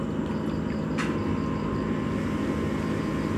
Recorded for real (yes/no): yes